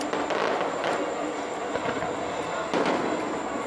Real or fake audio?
real